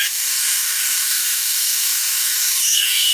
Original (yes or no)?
no